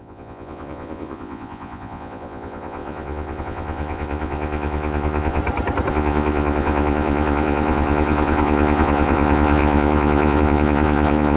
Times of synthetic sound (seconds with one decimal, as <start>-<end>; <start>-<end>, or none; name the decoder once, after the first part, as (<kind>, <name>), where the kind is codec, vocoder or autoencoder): 0.0-5.4 (vocoder, Vocos); 5.9-11.4